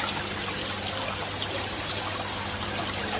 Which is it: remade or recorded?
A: recorded